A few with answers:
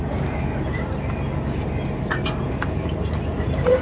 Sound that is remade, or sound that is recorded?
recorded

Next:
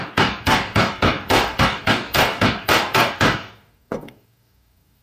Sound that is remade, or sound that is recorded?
remade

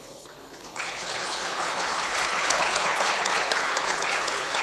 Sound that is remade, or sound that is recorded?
remade